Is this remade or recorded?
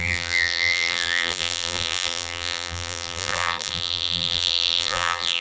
remade